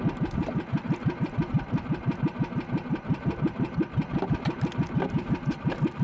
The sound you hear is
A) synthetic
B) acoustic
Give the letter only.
B